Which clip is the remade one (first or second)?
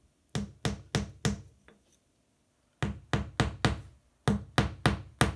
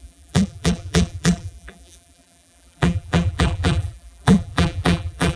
second